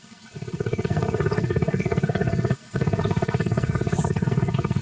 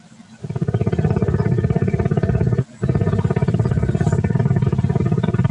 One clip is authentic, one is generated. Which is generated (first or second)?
first